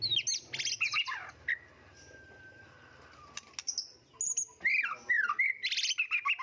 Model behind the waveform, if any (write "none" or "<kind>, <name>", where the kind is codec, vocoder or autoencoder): none